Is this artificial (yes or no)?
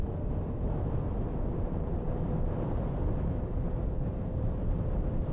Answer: no